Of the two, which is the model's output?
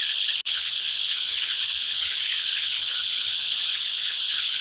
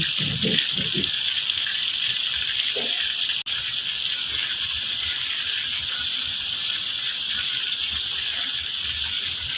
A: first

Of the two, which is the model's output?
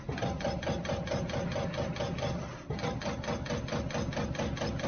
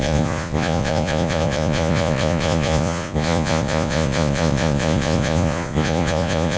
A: second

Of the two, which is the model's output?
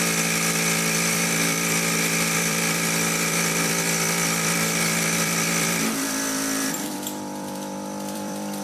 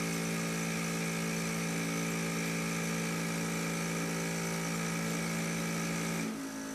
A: first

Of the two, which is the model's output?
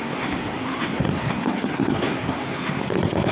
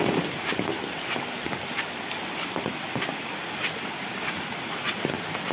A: first